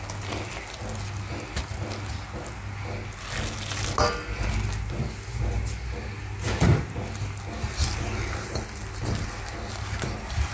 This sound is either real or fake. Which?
real